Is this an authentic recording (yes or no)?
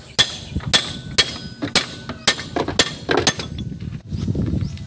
yes